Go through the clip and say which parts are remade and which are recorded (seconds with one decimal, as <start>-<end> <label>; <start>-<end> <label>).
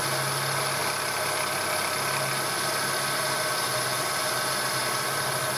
0.0-5.6 recorded